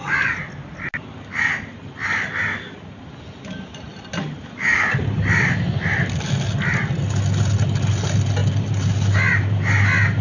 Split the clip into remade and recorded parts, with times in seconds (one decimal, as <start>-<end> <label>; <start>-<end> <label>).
0.0-10.2 recorded